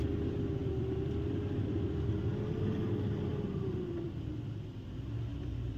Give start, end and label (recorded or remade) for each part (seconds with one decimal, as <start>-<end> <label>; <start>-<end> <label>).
0.0-0.6 recorded; 0.6-1.1 remade; 1.1-1.6 recorded; 1.6-2.1 remade; 2.1-3.3 recorded; 3.3-4.3 remade; 4.3-5.3 recorded; 5.3-5.8 remade